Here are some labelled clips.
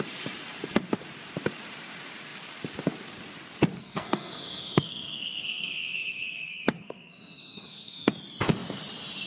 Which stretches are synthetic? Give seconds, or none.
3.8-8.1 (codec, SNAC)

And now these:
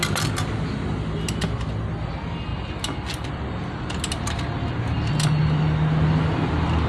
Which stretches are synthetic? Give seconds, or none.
none

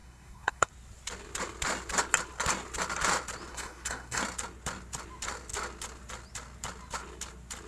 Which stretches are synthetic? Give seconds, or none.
0.0-0.7 (codec, SNAC); 3.5-4.2

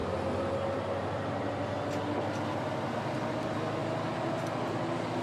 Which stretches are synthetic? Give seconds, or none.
none

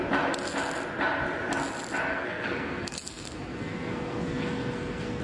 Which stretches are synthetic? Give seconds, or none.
2.1-5.2 (codec, SNAC)

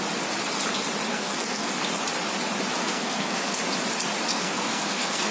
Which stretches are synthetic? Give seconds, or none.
1.1-1.7 (codec, SNAC); 2.8-3.6; 4.3-5.3

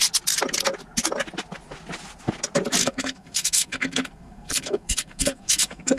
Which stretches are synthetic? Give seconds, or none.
2.8-6.0 (codec, SNAC)